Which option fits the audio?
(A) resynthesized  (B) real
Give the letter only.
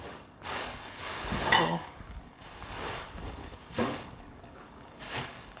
A